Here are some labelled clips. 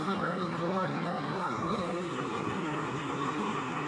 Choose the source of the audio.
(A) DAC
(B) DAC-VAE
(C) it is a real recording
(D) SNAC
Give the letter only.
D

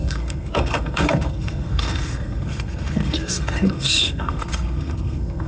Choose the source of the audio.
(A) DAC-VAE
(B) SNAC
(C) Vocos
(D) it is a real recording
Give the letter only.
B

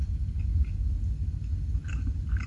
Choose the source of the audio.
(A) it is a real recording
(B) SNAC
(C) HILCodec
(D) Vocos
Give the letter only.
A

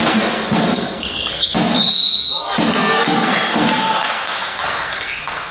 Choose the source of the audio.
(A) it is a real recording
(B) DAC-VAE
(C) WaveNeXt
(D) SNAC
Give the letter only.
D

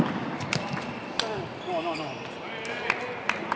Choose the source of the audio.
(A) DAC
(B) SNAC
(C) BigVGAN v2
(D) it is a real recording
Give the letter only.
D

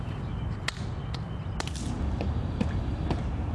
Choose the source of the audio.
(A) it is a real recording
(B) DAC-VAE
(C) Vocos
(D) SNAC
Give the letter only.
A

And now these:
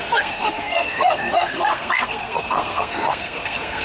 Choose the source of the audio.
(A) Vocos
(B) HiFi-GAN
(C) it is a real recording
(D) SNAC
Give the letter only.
D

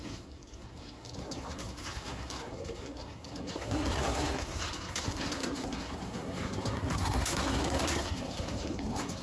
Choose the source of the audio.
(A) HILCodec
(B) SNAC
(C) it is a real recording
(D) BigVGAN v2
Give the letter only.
B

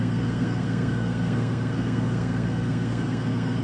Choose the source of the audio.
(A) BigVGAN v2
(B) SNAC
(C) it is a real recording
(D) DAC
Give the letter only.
B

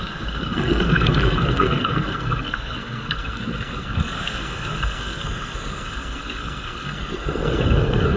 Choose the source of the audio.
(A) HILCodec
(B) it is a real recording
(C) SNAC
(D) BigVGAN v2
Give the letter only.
C